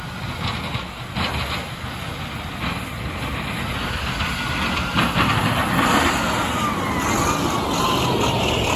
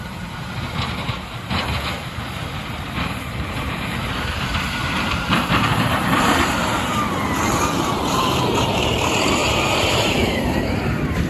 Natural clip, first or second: first